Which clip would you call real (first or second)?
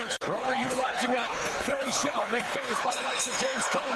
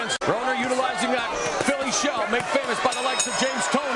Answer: second